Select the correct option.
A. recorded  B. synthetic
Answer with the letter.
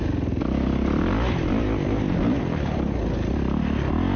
A